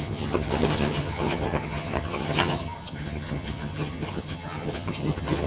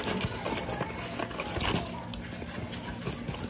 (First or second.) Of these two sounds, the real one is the second